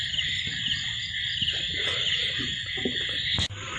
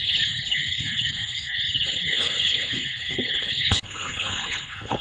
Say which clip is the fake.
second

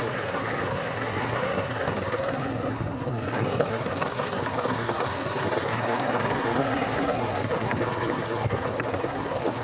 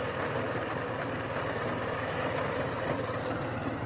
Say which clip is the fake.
first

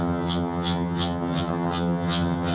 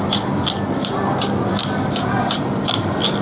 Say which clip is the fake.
first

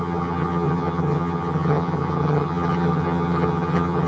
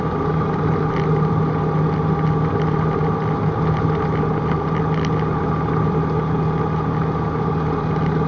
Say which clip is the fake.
first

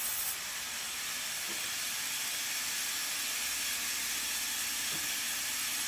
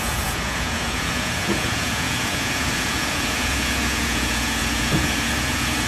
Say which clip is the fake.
second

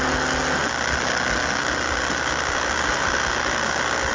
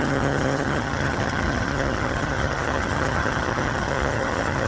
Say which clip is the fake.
second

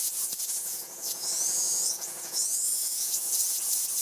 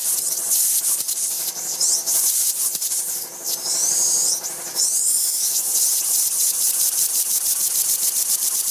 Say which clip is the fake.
first